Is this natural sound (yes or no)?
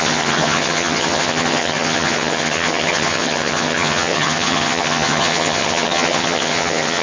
no